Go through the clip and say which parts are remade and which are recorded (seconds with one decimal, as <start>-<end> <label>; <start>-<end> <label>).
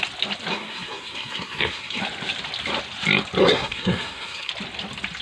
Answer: 0.0-0.5 recorded; 0.5-2.0 remade; 2.0-3.4 recorded; 3.4-4.5 remade; 4.5-5.2 recorded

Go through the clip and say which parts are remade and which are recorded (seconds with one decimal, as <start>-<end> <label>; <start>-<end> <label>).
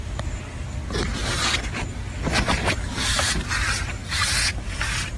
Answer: 0.0-0.8 remade; 0.8-2.3 recorded; 2.3-4.0 remade; 4.0-4.5 recorded; 4.5-5.2 remade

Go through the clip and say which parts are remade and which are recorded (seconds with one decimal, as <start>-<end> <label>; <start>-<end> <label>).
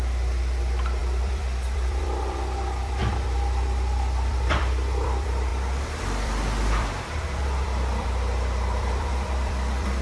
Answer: 0.0-5.5 remade; 5.5-6.0 recorded; 6.0-10.0 remade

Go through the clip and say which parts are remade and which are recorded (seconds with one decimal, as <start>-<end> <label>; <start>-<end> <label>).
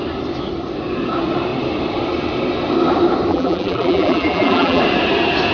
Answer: 0.0-3.3 recorded; 3.3-4.8 remade; 4.8-5.5 recorded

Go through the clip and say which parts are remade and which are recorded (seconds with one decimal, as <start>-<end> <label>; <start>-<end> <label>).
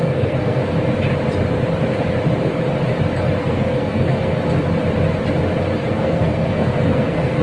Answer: 0.0-0.6 remade; 0.6-3.4 recorded; 3.4-4.3 remade; 4.3-5.9 recorded; 5.9-7.4 remade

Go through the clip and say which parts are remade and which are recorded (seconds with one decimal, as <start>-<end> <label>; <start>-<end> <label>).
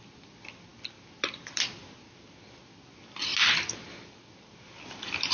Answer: 0.0-5.3 recorded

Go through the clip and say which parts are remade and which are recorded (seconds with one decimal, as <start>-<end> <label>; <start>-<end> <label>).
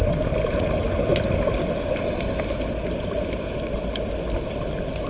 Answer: 0.0-5.1 recorded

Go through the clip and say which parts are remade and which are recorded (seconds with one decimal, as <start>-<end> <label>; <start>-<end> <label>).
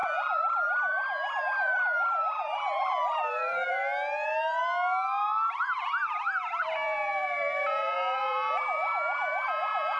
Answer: 0.0-3.8 remade; 3.8-6.6 recorded; 6.6-10.0 remade